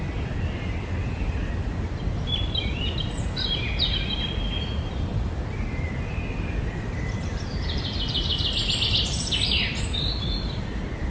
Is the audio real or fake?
real